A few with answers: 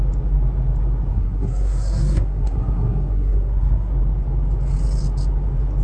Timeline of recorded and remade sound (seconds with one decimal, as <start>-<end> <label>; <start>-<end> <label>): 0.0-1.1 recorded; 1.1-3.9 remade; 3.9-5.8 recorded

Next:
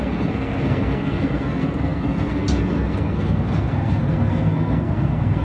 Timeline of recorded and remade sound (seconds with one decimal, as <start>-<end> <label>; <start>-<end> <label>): 0.0-5.4 remade

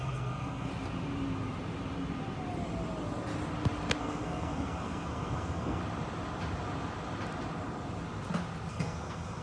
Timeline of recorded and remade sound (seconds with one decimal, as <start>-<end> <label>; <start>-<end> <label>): 0.0-0.7 remade; 0.7-4.0 recorded; 4.0-5.8 remade; 5.8-8.7 recorded; 8.7-9.4 remade

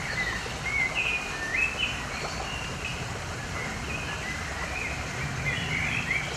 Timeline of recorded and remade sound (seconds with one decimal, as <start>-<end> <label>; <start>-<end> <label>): 0.0-6.4 recorded

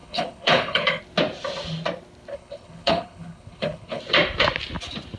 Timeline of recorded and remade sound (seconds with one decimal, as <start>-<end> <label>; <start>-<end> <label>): 0.0-1.0 remade; 1.0-2.3 recorded; 2.3-4.0 remade; 4.0-5.2 recorded

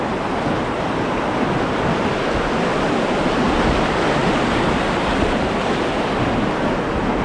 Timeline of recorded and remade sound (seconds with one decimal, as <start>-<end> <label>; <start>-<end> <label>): 0.0-7.2 recorded

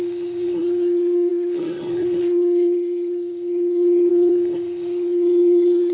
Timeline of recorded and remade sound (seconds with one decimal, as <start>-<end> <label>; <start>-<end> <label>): 0.0-5.9 remade

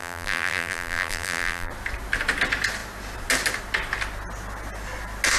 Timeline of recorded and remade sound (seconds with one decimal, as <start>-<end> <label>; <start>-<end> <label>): 0.0-1.7 remade; 1.7-5.4 recorded